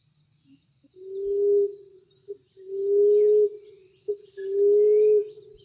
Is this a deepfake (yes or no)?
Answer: no